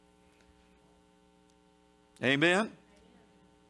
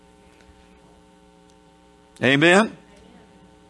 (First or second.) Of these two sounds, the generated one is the second